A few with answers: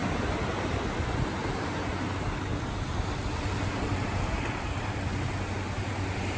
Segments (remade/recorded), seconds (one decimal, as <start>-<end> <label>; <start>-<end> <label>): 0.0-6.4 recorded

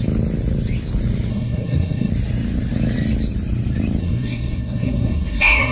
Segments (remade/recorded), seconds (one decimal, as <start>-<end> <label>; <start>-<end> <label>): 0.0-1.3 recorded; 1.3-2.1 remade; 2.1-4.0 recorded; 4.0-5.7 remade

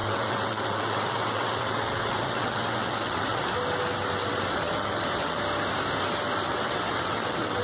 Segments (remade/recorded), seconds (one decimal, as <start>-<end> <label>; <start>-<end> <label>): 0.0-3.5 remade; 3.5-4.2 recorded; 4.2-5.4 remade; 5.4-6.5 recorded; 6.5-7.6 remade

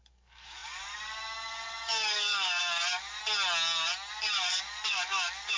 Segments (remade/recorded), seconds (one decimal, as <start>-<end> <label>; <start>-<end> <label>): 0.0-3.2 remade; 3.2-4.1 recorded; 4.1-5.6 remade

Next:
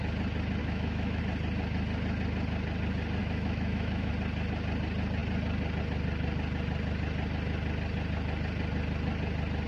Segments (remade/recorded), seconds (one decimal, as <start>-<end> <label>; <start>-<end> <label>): 0.0-0.6 recorded; 0.6-1.2 remade; 1.2-3.2 recorded; 3.2-4.1 remade; 4.1-9.7 recorded

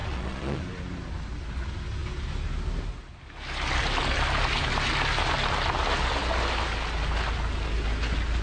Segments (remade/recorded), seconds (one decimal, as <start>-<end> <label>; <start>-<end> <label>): 0.0-0.6 remade; 0.6-8.4 recorded